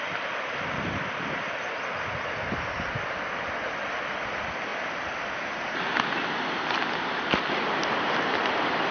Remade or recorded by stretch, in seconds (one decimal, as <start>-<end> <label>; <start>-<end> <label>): 0.0-4.7 recorded; 4.7-6.2 remade; 6.2-8.9 recorded